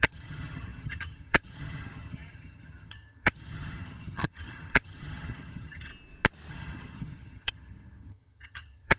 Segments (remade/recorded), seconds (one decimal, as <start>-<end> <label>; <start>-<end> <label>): 0.0-5.9 remade; 5.9-6.5 recorded; 6.5-9.0 remade